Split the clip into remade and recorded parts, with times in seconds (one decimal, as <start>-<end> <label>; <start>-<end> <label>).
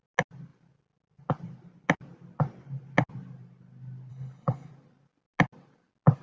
0.0-4.1 recorded; 4.1-4.7 remade; 4.7-6.2 recorded